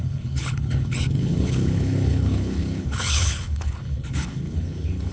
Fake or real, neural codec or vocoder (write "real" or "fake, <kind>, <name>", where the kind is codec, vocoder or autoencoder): fake, codec, HILCodec